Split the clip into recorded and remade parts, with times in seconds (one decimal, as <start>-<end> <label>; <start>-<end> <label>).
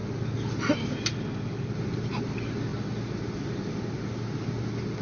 0.0-5.0 recorded